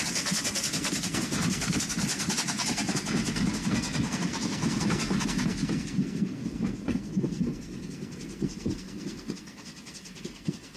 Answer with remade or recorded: remade